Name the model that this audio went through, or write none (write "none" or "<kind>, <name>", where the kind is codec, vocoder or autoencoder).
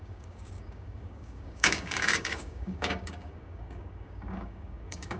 codec, DAC